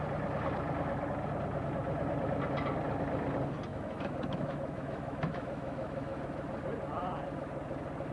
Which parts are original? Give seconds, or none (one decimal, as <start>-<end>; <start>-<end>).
0.0-3.7; 6.2-8.1